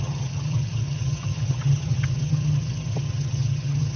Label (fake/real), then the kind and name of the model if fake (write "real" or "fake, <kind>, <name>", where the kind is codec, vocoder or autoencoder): fake, vocoder, HiFi-GAN